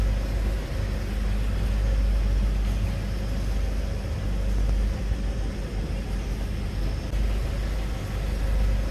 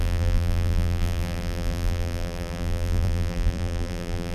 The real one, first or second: first